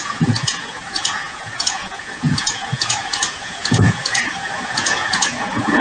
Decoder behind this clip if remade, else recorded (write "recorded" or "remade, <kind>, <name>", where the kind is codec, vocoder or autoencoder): remade, vocoder, Vocos